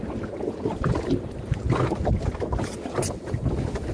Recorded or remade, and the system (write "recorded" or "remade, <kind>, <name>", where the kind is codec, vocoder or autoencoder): recorded